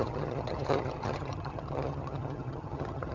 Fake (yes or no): yes